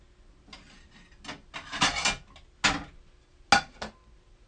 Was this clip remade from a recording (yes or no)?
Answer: no